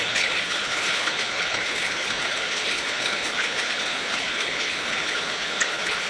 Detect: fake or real fake